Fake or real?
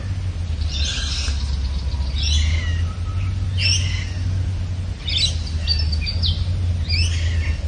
real